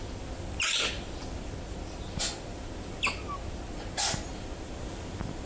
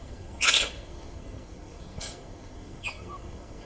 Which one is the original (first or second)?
first